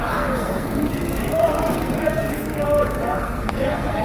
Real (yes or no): no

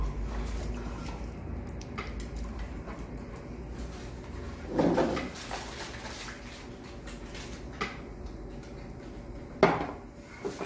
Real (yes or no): yes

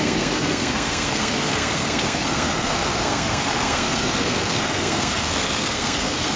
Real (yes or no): no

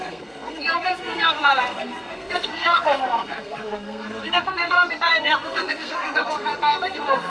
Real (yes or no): no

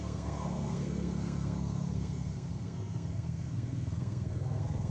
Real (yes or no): no